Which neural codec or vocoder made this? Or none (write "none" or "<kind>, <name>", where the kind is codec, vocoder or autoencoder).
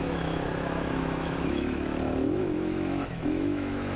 autoencoder, DAC-VAE